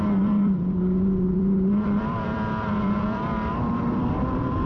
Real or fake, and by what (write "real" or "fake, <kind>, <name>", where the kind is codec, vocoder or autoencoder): fake, vocoder, BigVGAN v2